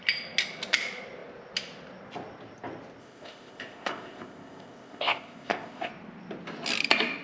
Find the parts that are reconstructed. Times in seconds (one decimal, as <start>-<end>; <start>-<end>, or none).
3.0-5.9